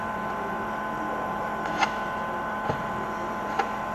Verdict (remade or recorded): remade